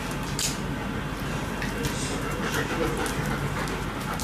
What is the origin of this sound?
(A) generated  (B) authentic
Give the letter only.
B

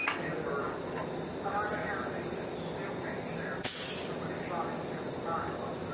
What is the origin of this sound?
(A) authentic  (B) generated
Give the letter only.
A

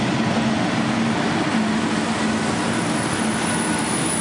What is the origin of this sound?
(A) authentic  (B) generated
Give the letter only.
A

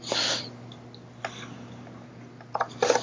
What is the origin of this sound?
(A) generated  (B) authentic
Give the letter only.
B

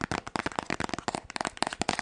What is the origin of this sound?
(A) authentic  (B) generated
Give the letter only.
A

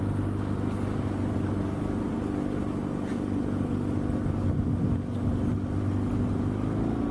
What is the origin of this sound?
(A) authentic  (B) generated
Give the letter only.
A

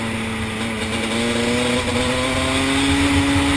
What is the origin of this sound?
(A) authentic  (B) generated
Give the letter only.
A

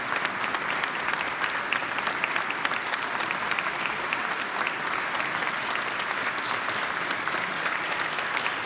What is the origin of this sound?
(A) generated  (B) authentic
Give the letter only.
B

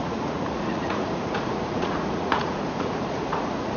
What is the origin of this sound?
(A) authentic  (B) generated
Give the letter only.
B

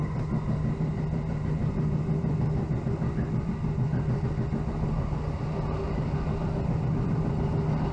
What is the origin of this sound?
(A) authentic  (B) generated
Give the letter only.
A